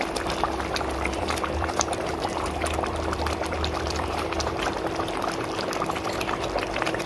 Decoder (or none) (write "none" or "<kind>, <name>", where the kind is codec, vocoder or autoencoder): vocoder, BigVGAN v2